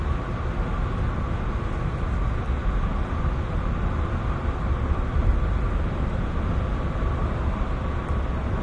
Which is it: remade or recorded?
recorded